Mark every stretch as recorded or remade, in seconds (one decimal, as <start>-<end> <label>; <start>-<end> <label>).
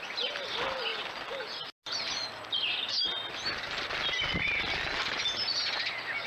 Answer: 0.0-6.3 recorded